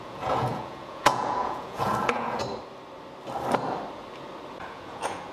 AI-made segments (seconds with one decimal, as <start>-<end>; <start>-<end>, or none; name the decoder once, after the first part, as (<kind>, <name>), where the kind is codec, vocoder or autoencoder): 0.0-2.4 (vocoder, Vocos); 4.5-5.3